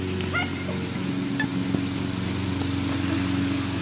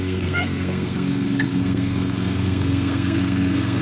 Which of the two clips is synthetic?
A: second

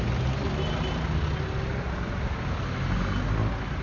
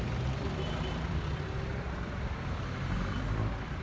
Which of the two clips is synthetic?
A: second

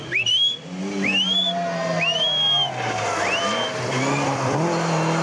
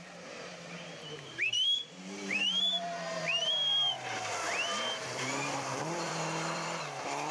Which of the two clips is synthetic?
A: second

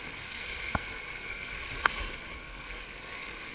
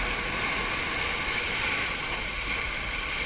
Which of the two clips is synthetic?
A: first